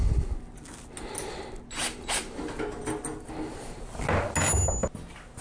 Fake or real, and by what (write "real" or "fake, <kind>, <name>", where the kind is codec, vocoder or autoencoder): real